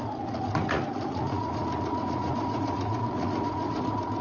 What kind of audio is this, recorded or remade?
remade